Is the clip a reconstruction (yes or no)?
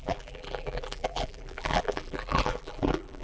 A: yes